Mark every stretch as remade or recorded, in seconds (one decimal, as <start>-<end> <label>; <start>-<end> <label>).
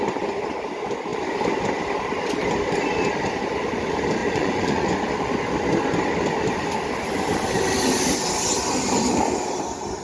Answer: 0.0-4.2 recorded; 4.2-5.1 remade; 5.1-10.0 recorded